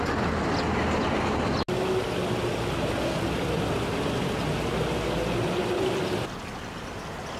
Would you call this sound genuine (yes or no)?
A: yes